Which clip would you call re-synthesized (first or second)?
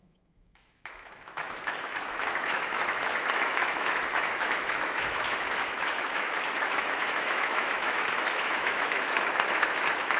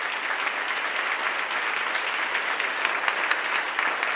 first